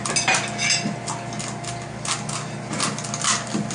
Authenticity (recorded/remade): recorded